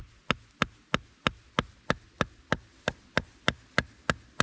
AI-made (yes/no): no